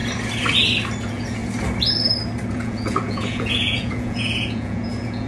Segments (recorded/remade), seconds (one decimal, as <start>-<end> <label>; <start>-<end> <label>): 0.0-1.0 recorded; 1.0-1.4 remade; 1.4-2.5 recorded; 2.5-5.3 remade